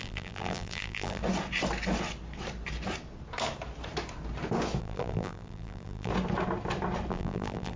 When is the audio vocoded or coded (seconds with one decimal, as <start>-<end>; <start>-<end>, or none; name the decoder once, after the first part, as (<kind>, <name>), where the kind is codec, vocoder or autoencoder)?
0.0-1.2 (vocoder, BigVGAN v2); 4.8-6.1; 7.1-7.8